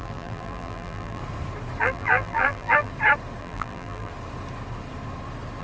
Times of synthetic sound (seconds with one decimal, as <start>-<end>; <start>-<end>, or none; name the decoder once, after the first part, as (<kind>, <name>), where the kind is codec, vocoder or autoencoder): 0.0-1.2 (vocoder, BigVGAN v2); 1.8-2.9; 3.4-4.1